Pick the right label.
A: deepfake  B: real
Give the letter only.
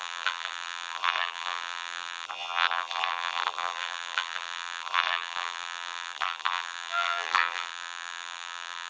A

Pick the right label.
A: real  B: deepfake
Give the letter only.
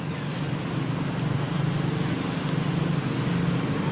A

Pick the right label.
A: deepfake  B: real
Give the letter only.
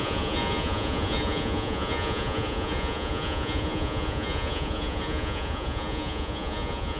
A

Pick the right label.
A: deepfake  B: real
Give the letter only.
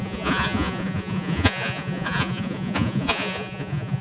A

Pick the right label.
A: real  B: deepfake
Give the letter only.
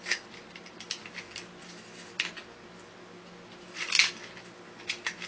A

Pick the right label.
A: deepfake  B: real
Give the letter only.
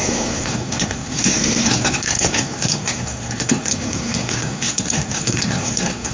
A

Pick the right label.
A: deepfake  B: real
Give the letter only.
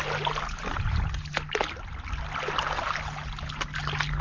B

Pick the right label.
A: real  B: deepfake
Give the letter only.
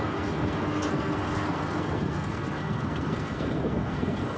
B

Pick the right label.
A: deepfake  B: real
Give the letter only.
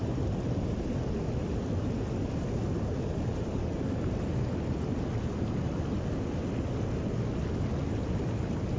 B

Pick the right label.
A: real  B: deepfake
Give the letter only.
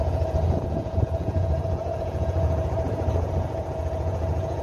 B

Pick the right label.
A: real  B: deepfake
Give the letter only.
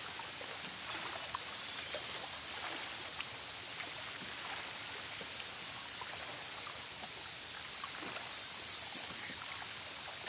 A